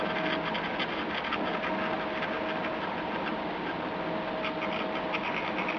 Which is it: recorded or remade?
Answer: recorded